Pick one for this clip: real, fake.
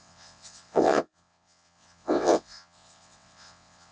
fake